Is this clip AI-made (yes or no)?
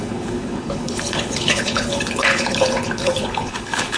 yes